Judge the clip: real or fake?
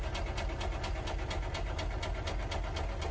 real